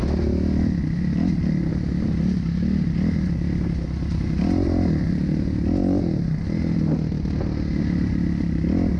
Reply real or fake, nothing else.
real